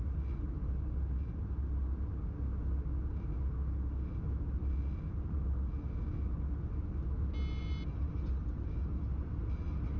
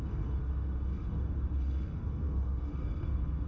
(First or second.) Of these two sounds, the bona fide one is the first